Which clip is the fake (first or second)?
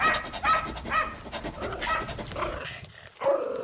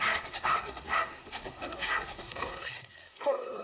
second